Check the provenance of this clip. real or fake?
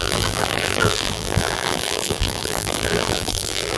fake